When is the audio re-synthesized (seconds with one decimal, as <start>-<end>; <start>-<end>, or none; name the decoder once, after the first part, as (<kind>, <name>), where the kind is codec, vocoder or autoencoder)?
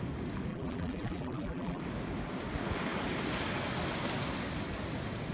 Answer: 0.5-1.8 (vocoder, BigVGAN v2)